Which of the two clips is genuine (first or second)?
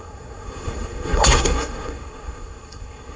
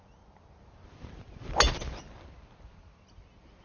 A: second